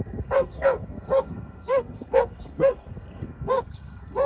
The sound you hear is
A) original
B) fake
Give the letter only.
B